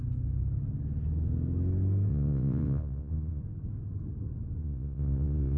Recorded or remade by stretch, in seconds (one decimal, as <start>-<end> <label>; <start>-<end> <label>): 0.0-2.1 recorded; 2.1-3.4 remade; 3.4-4.6 recorded; 4.6-5.6 remade